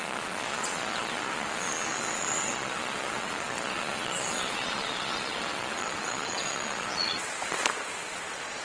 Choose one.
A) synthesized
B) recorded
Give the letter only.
A